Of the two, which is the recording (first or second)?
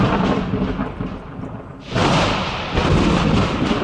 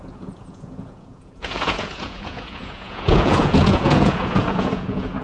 first